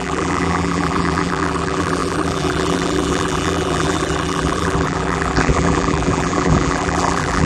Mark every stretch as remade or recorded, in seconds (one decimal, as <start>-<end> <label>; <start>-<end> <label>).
0.0-7.5 remade